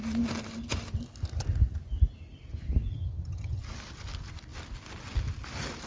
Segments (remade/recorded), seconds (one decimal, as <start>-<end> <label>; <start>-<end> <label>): 0.0-2.9 recorded; 2.9-3.6 remade; 3.6-5.9 recorded

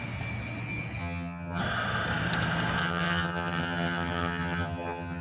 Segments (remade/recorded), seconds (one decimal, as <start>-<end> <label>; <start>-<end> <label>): 0.0-1.0 recorded; 1.0-1.6 remade; 1.6-2.8 recorded; 2.8-5.2 remade

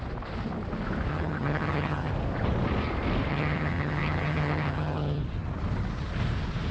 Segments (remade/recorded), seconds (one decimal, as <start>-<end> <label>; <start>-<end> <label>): 0.0-1.1 recorded; 1.1-2.1 remade; 2.1-3.3 recorded; 3.3-5.2 remade; 5.2-6.7 recorded

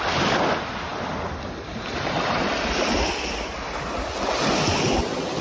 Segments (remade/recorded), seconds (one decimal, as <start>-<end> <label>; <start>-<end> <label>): 0.0-5.4 recorded

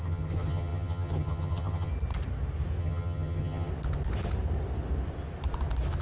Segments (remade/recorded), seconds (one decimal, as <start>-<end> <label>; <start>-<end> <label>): 0.0-1.9 remade; 1.9-2.8 recorded; 2.8-3.7 remade; 3.7-6.0 recorded

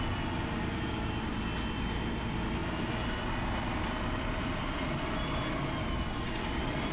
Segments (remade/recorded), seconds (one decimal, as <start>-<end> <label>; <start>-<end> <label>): 0.0-6.9 recorded